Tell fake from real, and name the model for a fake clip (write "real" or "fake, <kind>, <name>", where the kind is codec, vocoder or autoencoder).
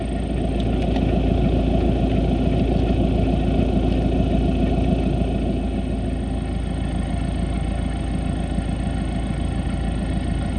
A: real